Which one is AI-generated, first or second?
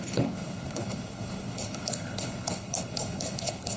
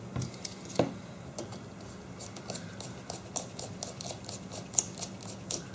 first